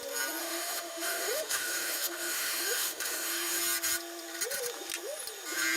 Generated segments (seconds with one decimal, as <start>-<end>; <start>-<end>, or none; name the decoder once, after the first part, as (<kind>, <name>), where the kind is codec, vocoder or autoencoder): 0.4-3.6 (autoencoder, DAC-VAE)